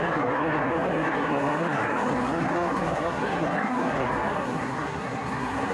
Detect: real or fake fake